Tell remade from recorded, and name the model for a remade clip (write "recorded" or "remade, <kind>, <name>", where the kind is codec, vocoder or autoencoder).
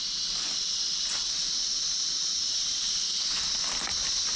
recorded